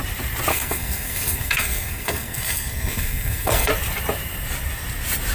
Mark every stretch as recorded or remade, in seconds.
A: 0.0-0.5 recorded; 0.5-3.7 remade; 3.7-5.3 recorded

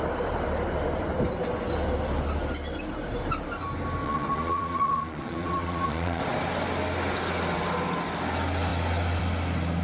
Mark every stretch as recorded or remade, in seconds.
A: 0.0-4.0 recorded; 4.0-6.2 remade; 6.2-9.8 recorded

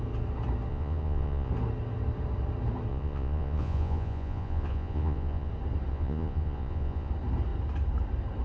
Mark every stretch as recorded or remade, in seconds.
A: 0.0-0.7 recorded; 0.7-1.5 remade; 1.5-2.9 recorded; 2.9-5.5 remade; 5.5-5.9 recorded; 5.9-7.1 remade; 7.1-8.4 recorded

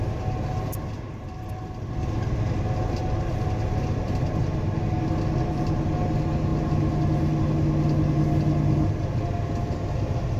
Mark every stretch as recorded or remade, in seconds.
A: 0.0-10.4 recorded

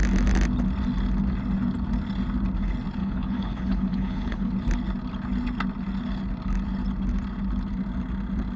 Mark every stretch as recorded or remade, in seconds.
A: 0.0-3.0 recorded; 3.0-4.5 remade; 4.5-8.6 recorded